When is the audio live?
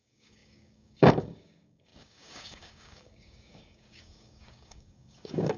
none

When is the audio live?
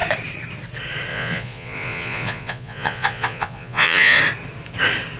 0.0-1.1; 4.2-5.2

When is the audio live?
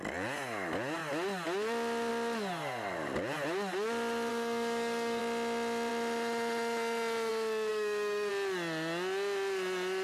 0.0-4.3; 5.2-7.7; 8.3-10.0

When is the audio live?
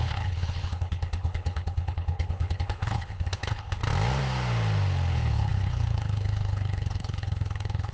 3.8-5.1